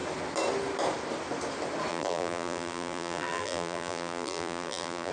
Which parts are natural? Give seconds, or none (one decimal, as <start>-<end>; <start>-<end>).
0.0-1.9